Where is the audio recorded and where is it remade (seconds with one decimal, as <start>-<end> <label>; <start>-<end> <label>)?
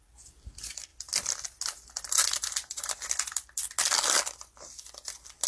0.0-5.5 recorded